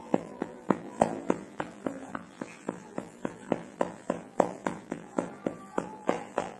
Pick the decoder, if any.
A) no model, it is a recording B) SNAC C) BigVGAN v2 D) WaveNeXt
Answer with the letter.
C